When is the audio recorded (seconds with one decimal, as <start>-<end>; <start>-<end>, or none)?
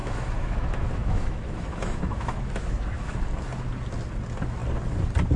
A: 3.2-5.4